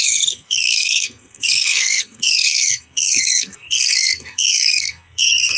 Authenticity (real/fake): fake